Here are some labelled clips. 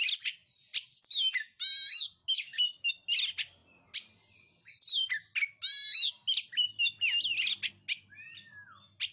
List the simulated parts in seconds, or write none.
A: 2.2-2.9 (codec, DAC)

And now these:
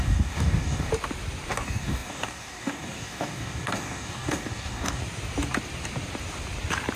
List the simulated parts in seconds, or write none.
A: 0.0-0.9 (codec, DAC); 1.5-5.0

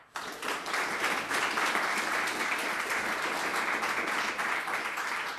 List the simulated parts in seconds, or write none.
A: none

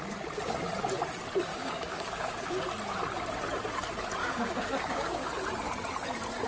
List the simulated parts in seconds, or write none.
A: 1.5-2.6 (codec, DAC); 4.2-5.3

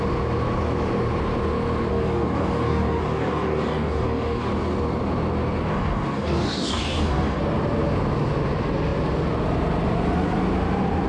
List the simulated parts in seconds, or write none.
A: 1.9-4.5 (codec, DAC); 5.7-7.4

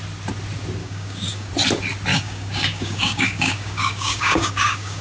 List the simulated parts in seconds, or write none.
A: 0.8-1.5 (codec, DAC); 2.1-5.0

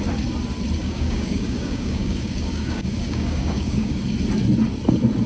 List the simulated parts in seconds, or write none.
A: 0.8-4.0 (codec, DAC)

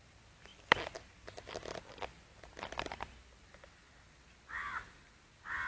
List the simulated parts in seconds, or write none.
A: none